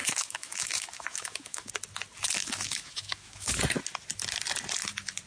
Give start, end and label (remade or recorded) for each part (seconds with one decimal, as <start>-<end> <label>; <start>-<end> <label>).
0.0-1.7 remade; 1.7-2.4 recorded; 2.4-3.6 remade; 3.6-5.3 recorded